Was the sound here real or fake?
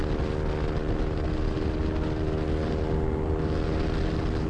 real